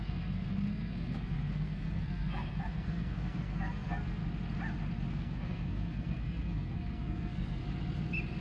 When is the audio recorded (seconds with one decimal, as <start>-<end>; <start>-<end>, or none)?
4.2-5.1; 7.6-8.4